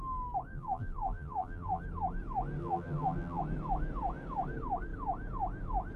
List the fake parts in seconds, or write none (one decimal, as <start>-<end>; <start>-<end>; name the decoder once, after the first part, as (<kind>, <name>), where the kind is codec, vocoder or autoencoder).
0.5-1.8 (vocoder, BigVGAN v2); 2.6-3.4